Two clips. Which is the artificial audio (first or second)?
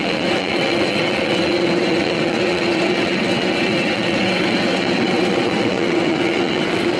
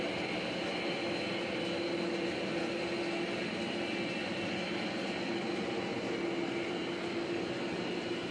first